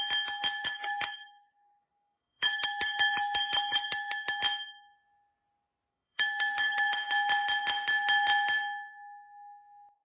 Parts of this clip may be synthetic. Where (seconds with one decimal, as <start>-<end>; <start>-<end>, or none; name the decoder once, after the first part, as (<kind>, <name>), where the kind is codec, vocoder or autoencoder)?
0.6-4.3 (codec, DAC); 5.9-6.9

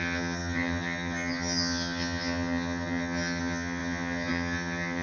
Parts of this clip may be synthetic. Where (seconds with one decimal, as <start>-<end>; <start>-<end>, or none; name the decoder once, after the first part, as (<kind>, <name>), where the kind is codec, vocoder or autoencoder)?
0.0-5.0 (vocoder, HiFi-GAN)

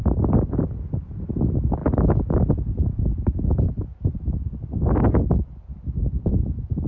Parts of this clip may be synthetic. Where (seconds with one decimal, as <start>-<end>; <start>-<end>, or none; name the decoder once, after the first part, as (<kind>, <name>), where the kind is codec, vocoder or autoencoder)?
none

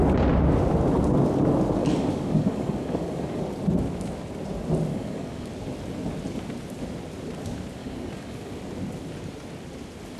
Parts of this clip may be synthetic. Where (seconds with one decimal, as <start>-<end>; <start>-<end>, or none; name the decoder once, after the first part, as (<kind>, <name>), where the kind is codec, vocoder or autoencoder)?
1.8-3.4 (codec, DAC); 4.9-5.5; 7.8-8.5

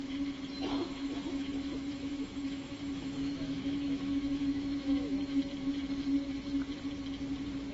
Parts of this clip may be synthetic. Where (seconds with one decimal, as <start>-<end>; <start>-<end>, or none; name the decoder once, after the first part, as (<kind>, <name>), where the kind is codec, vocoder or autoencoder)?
0.8-5.4 (autoencoder, DAC-VAE)

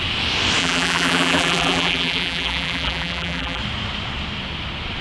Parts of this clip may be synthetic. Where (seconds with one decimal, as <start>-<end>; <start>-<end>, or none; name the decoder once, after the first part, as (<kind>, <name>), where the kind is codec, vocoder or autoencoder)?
0.6-3.6 (vocoder, BigVGAN v2)

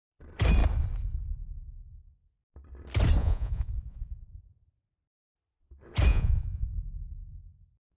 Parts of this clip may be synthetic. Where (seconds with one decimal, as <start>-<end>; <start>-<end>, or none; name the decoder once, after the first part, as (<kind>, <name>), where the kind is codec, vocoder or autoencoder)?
3.2-5.0 (vocoder, Vocos); 6.1-6.7